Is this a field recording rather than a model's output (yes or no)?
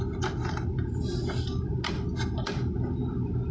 yes